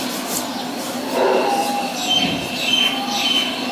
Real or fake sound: real